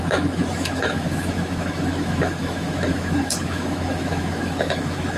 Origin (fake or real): fake